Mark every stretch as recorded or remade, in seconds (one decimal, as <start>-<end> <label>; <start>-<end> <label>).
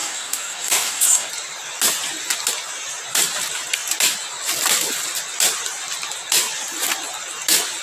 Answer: 0.0-1.3 remade; 1.3-7.8 recorded